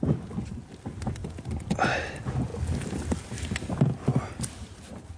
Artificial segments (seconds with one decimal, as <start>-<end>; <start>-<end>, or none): none